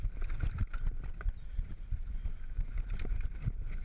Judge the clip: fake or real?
real